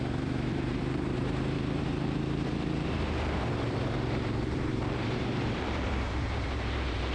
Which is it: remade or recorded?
remade